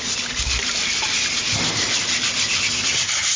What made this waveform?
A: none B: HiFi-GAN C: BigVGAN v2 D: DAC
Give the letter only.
A